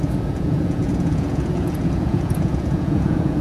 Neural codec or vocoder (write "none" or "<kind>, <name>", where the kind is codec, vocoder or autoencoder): vocoder, Vocos